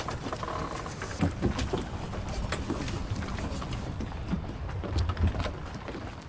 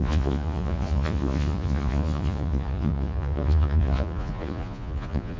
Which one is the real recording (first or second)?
first